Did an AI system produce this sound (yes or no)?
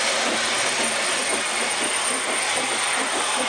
no